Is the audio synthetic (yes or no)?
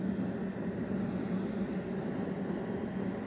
no